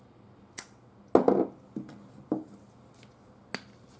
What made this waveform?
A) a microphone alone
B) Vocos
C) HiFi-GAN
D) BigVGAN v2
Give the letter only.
A